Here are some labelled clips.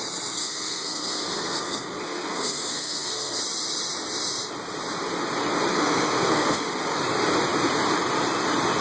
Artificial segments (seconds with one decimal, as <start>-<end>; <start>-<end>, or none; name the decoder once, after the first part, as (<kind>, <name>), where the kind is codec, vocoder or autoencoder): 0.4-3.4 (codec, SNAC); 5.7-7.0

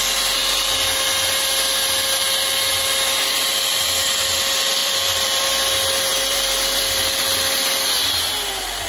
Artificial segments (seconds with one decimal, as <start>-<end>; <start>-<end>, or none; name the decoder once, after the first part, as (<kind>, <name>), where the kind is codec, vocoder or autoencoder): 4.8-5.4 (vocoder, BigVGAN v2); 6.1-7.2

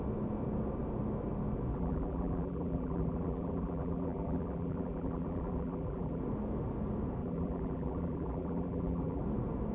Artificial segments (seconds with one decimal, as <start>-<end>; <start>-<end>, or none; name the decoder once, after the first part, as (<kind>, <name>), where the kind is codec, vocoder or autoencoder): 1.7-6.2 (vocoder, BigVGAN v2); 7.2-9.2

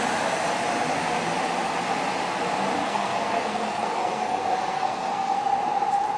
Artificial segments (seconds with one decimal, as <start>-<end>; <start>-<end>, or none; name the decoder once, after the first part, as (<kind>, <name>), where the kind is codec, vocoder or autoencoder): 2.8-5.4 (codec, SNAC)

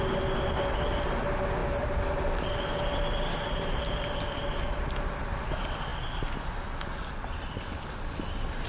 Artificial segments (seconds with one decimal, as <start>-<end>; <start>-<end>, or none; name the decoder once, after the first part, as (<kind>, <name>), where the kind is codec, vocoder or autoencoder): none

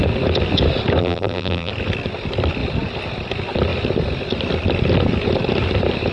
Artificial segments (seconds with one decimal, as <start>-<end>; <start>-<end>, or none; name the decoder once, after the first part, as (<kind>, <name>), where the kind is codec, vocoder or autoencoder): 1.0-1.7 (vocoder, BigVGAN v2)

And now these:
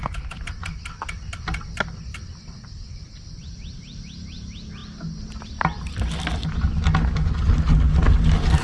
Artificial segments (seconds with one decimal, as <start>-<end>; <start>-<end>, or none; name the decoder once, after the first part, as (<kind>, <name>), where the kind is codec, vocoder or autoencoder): none